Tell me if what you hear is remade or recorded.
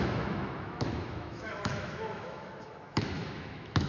remade